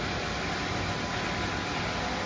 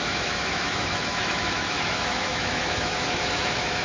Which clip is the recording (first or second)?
first